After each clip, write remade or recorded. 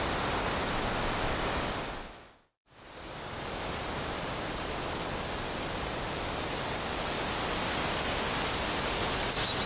recorded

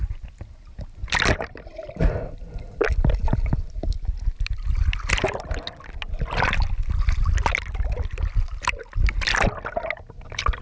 recorded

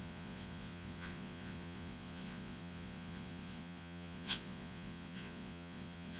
remade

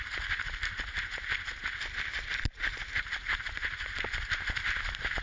recorded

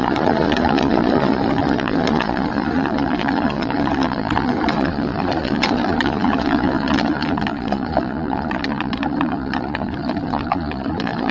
remade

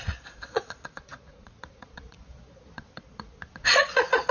remade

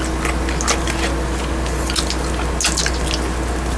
recorded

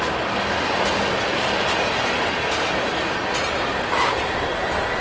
recorded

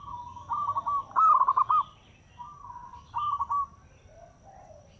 recorded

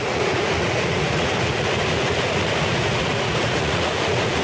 remade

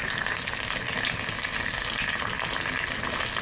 recorded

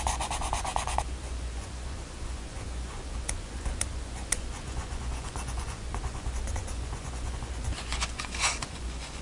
remade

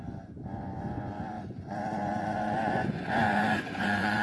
remade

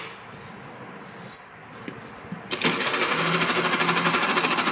recorded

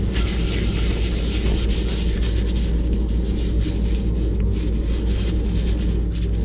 recorded